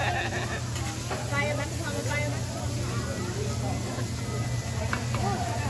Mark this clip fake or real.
real